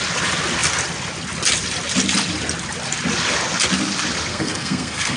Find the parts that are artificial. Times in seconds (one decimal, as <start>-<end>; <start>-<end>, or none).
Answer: 4.3-5.2

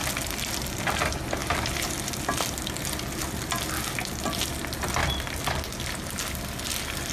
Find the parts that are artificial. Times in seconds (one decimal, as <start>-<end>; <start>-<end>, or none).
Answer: none

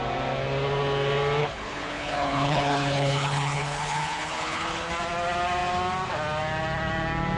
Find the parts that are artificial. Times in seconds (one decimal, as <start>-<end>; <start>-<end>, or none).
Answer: 1.4-4.9

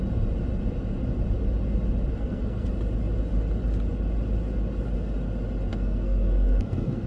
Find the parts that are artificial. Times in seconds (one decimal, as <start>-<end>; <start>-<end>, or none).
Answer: 2.2-2.7; 5.7-7.1

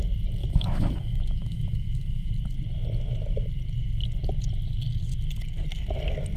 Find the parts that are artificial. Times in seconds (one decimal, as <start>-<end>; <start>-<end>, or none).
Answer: 0.4-2.3